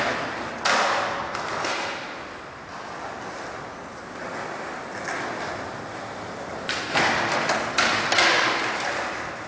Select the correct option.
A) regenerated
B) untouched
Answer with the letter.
B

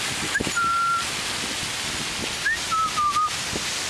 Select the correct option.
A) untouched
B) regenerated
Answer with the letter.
A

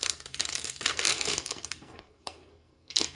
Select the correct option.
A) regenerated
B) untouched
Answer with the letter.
A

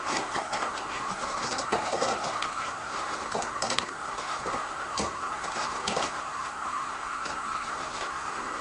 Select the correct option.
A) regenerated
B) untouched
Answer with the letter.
A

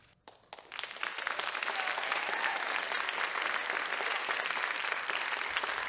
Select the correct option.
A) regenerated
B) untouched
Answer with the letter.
B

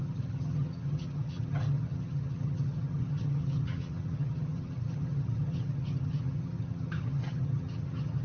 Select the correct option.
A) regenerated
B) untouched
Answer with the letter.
A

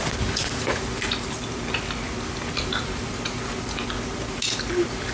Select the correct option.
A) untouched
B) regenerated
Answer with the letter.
A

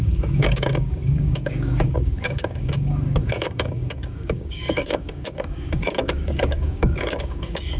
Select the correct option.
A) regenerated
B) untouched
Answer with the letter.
A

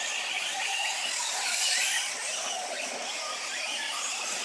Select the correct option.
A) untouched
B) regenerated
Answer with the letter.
A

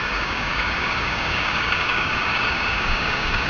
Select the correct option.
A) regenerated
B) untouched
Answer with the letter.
A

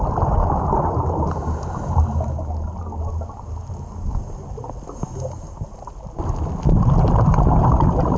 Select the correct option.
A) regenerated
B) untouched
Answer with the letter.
B